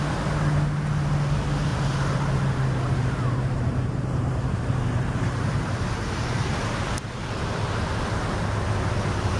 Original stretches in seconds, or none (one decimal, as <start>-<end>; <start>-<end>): 0.0-1.7; 6.9-9.4